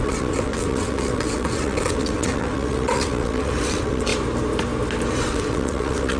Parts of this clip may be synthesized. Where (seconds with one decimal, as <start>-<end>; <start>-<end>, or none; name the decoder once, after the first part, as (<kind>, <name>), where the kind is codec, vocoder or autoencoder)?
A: 0.0-4.1 (vocoder, WaveNeXt); 5.1-6.2